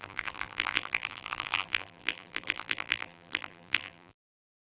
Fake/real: fake